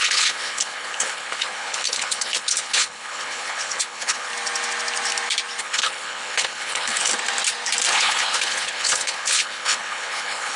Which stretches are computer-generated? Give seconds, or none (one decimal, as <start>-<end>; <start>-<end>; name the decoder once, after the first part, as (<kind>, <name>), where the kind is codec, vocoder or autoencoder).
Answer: 0.0-4.3 (codec, HILCodec); 5.6-7.1; 7.9-10.6